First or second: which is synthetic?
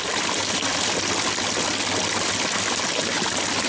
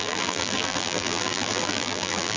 second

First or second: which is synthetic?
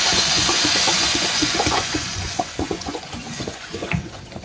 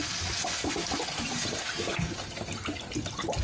first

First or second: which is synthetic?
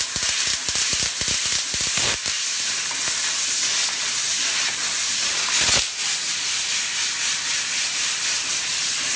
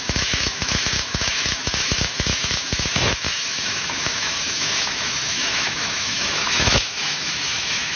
second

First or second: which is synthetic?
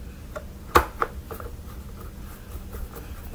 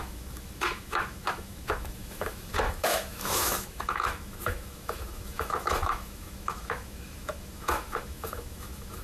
second